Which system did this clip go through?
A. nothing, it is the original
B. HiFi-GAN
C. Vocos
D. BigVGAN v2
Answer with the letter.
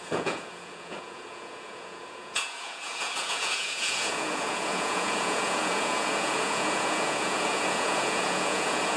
C